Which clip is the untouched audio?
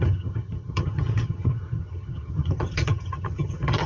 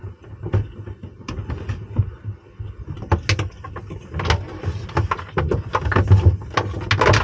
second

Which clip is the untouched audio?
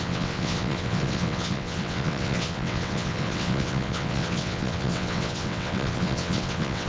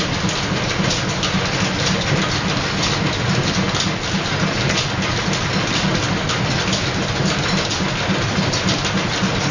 second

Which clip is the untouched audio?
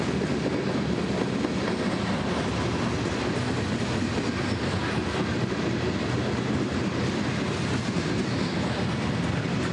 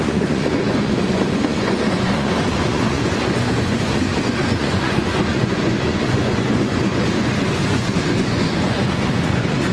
first